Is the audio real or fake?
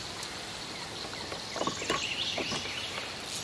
real